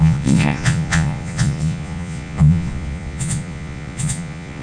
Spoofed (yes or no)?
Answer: yes